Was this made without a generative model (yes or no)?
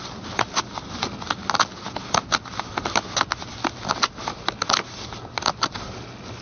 yes